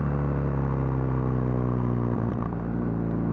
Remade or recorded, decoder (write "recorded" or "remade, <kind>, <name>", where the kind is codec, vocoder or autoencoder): recorded